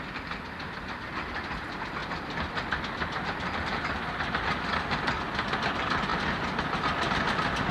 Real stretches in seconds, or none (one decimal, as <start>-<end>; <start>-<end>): 0.0-7.7